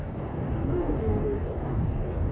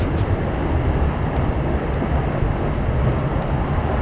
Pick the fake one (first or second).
first